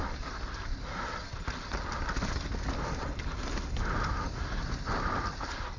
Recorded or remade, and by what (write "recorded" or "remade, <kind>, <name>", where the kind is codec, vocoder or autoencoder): recorded